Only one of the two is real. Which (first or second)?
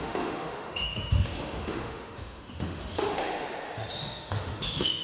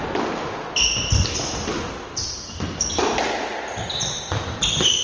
second